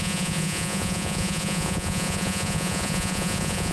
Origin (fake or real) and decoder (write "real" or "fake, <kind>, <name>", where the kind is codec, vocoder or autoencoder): fake, vocoder, Vocos